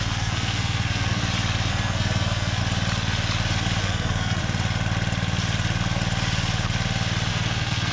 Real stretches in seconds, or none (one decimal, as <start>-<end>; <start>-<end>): 1.2-1.7; 2.6-3.8; 4.4-7.3